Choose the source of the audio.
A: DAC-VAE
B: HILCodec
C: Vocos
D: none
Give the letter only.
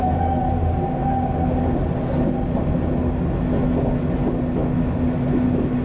D